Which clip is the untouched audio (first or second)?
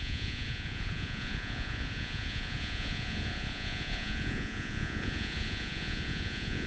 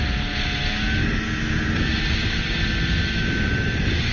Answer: second